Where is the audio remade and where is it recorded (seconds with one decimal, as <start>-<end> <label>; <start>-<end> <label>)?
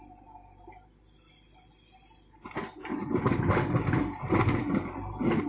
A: 0.0-5.5 recorded